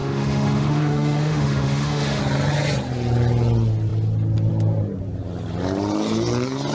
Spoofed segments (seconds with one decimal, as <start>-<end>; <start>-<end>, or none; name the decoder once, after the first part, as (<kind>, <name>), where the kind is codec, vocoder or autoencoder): 0.0-2.2 (autoencoder, DAC-VAE)